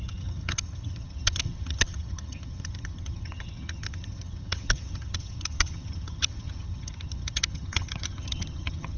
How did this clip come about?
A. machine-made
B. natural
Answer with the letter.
A